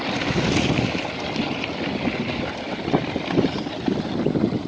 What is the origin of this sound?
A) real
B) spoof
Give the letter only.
A